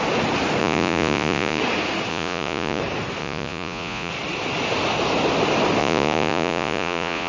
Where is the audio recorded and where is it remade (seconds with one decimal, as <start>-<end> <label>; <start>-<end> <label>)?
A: 0.0-0.6 recorded; 0.6-1.6 remade; 1.6-2.1 recorded; 2.1-2.8 remade; 2.8-3.2 recorded; 3.2-4.1 remade; 4.1-5.8 recorded; 5.8-7.3 remade

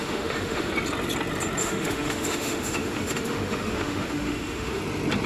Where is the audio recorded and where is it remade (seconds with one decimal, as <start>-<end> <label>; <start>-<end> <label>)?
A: 0.0-0.7 remade; 0.7-1.6 recorded; 1.6-4.8 remade; 4.8-5.3 recorded

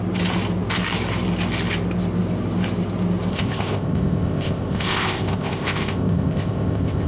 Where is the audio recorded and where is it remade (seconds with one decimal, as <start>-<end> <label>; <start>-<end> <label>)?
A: 0.0-3.3 recorded; 3.3-7.1 remade

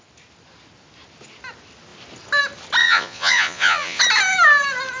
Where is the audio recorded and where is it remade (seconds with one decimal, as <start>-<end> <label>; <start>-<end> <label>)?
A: 0.0-2.8 recorded; 2.8-4.0 remade; 4.0-5.0 recorded

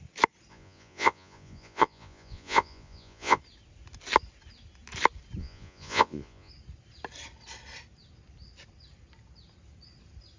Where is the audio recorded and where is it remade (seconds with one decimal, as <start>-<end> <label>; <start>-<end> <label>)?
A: 0.0-0.5 recorded; 0.5-3.4 remade; 3.4-5.4 recorded; 5.4-6.5 remade; 6.5-10.4 recorded